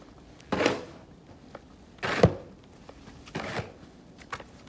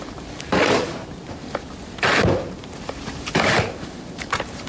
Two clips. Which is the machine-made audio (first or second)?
second